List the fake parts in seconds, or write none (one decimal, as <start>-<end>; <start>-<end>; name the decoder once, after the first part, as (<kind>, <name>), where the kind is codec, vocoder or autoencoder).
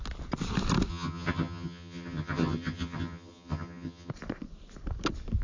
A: 0.9-4.1 (vocoder, HiFi-GAN)